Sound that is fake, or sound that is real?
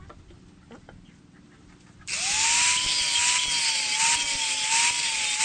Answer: real